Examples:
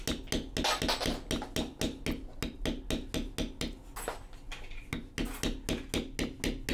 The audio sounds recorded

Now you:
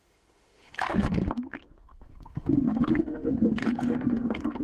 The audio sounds remade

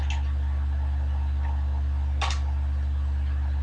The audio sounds recorded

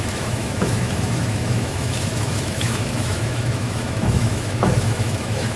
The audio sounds remade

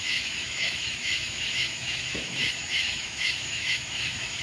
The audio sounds remade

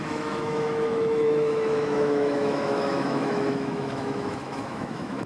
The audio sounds remade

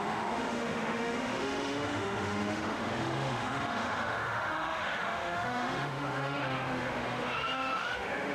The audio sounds remade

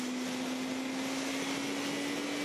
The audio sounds recorded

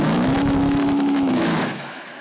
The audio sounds remade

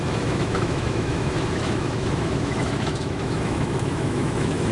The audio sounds remade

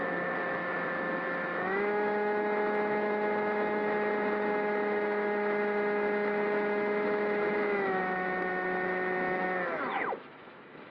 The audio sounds remade